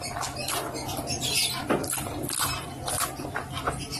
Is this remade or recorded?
recorded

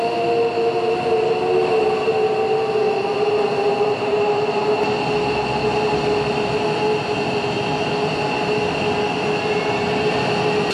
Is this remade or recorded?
recorded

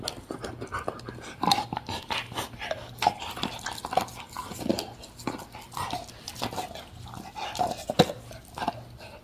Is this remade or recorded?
recorded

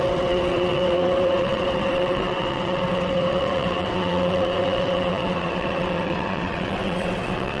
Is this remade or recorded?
remade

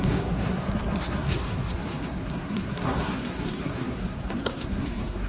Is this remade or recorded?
remade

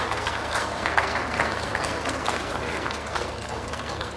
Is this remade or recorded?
remade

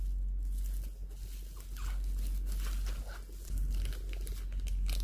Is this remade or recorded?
recorded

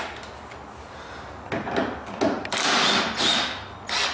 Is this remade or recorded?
recorded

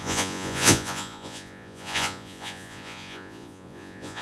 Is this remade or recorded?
remade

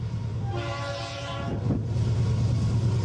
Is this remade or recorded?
recorded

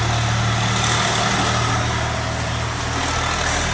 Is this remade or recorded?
recorded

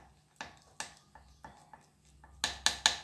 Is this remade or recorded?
recorded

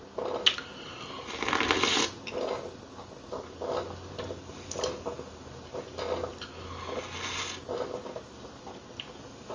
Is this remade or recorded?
recorded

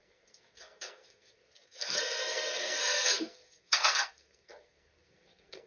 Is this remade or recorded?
remade